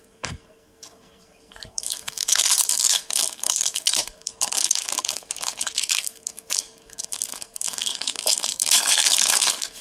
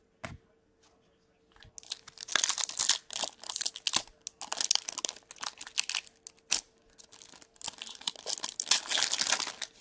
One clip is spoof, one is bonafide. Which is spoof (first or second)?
first